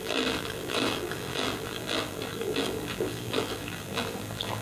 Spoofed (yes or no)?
yes